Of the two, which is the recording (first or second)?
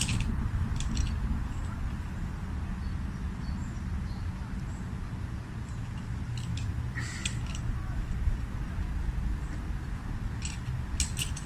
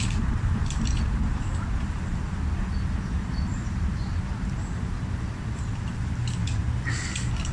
first